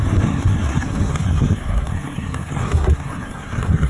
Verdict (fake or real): fake